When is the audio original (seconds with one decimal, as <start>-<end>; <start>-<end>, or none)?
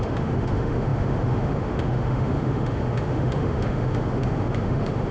none